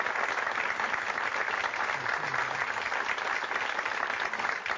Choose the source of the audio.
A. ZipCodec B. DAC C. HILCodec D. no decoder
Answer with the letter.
D